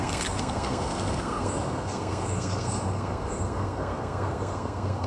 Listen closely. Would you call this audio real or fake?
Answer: fake